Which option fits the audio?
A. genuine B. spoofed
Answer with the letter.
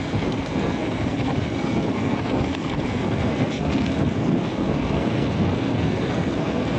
B